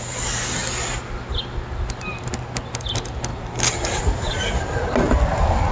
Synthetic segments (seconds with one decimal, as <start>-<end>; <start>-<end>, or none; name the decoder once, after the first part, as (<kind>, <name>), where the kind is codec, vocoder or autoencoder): 3.3-4.0 (vocoder, BigVGAN v2)